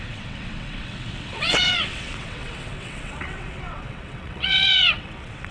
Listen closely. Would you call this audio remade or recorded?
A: remade